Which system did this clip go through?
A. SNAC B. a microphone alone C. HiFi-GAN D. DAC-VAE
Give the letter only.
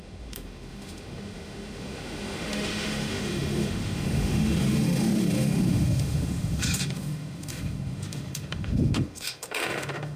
D